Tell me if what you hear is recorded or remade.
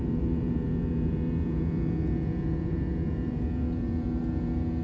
remade